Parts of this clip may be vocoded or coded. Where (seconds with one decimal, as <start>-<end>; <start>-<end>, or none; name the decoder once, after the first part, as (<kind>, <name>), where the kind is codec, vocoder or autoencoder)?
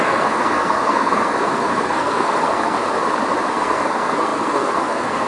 0.0-2.8 (codec, SNAC); 3.5-5.3